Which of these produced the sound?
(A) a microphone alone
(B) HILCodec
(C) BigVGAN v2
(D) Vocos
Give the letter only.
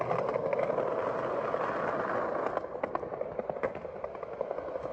A